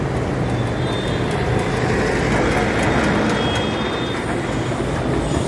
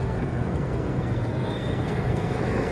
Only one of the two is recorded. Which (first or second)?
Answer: first